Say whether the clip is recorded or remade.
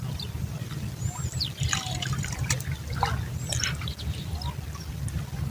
recorded